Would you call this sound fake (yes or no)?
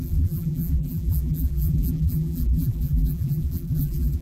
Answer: yes